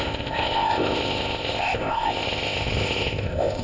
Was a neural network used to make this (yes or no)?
yes